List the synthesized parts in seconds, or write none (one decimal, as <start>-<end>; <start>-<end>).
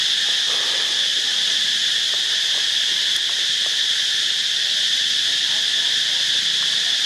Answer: none